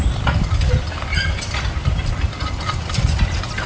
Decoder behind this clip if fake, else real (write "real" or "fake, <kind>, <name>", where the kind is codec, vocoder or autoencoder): real